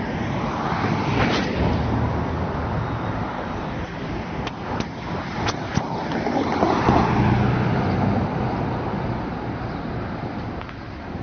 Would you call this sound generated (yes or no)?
no